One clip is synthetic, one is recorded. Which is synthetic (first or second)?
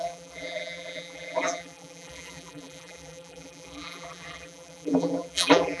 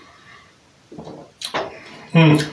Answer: first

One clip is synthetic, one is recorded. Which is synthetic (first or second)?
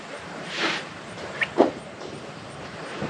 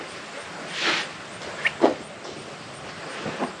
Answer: first